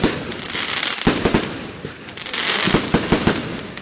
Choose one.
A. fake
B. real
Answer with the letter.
B